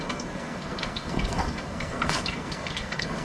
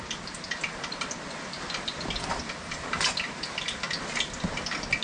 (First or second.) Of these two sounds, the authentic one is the second